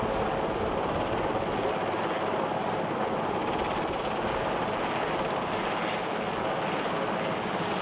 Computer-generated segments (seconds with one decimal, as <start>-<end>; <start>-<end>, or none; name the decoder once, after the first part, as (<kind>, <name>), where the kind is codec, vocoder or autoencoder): 3.4-6.0 (vocoder, BigVGAN v2)